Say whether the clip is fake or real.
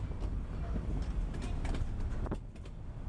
real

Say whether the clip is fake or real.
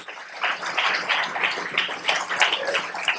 real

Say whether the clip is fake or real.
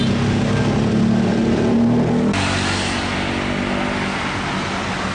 real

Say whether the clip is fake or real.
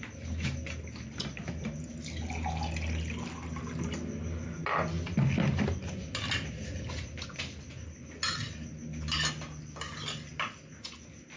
real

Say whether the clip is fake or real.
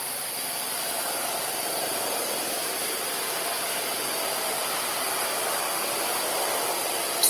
real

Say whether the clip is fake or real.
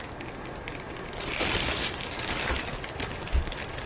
fake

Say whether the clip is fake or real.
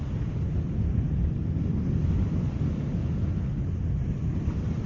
real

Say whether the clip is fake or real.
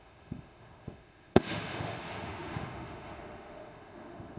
fake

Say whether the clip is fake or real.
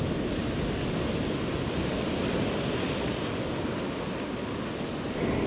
real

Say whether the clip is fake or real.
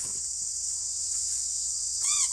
fake